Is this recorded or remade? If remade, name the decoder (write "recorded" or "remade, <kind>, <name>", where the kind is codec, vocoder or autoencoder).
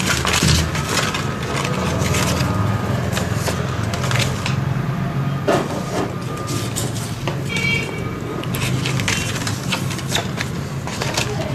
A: recorded